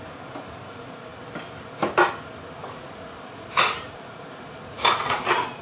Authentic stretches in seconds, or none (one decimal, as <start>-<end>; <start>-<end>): 0.0-2.6